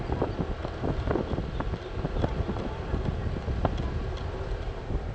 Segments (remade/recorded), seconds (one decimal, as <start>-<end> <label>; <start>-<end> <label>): 0.0-5.1 recorded